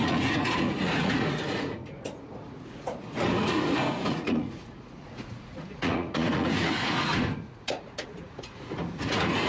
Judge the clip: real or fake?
fake